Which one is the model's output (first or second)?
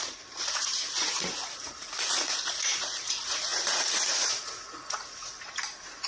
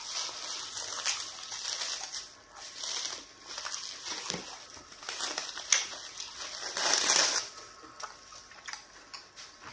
first